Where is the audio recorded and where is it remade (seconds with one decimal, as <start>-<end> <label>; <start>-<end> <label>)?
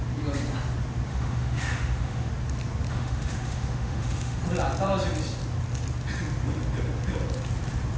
0.0-1.1 recorded; 1.1-2.3 remade; 2.3-2.9 recorded; 2.9-4.4 remade; 4.4-8.0 recorded